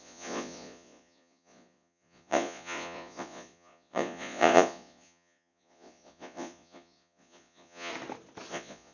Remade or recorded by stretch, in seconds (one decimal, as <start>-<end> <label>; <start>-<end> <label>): 0.0-7.9 remade; 7.9-8.5 recorded; 8.5-8.9 remade